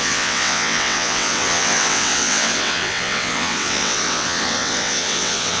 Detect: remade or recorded remade